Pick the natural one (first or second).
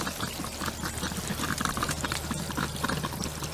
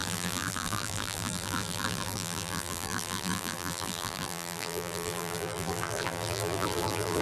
first